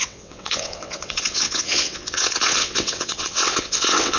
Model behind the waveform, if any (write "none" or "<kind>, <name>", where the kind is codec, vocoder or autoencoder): vocoder, WaveNeXt